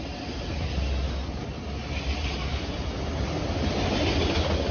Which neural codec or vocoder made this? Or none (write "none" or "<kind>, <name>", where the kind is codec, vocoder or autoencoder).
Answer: none